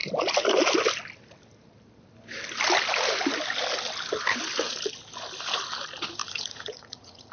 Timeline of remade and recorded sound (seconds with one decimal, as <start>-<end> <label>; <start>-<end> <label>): 0.0-6.2 recorded; 6.2-7.3 remade